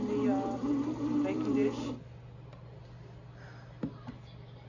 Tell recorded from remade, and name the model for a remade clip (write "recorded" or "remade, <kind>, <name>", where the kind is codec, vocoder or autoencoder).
recorded